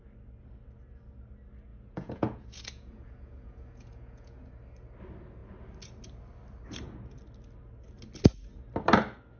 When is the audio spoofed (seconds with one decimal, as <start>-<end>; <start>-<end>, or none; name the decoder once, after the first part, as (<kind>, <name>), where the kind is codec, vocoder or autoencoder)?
1.7-4.5 (vocoder, Vocos)

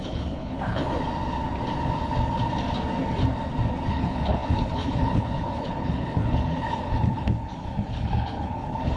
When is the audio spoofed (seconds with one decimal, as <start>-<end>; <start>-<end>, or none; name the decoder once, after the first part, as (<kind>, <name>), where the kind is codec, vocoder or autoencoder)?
0.0-0.8 (codec, HILCodec); 3.9-9.0

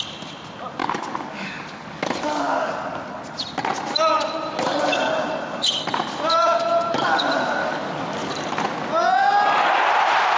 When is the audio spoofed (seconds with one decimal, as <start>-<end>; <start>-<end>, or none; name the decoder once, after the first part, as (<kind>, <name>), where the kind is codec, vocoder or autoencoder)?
0.8-2.7 (codec, DAC); 7.6-8.3

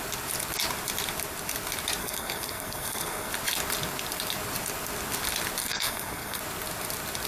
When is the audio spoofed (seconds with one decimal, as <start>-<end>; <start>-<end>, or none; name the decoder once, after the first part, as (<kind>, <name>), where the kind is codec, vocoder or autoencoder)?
2.0-3.3 (codec, SNAC); 5.6-6.4

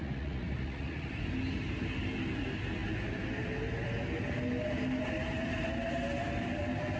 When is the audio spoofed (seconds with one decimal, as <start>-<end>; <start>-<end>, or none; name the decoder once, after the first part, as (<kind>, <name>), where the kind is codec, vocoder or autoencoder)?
0.0-1.1 (vocoder, Vocos)

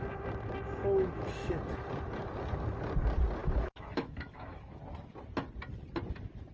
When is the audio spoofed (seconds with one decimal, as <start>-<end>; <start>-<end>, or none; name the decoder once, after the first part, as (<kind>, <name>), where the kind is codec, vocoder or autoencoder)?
0.8-1.5 (autoencoder, DAC-VAE); 3.4-4.8

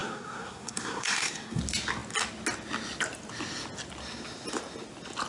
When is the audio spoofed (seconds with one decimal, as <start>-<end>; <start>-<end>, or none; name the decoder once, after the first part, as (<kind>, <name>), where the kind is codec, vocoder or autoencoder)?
0.0-1.6 (codec, SNAC)